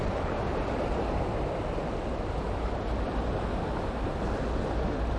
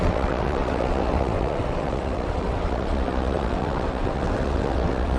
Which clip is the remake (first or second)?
second